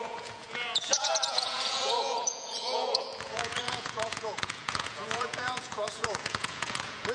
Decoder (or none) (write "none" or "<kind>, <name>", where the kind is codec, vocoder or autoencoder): vocoder, Vocos